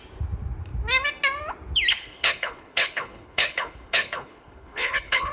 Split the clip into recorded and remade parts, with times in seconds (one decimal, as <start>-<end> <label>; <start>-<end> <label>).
0.0-1.9 recorded; 1.9-5.3 remade